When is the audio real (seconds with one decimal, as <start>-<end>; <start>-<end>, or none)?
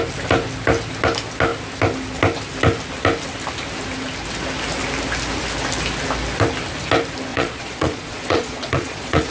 0.0-7.3